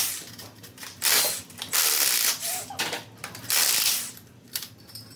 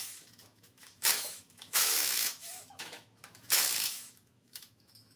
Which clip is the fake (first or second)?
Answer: second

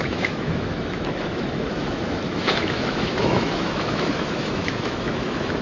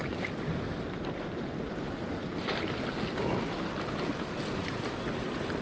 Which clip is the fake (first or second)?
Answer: first